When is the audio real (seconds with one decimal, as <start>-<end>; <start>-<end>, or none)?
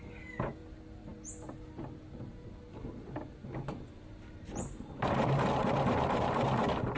0.0-7.0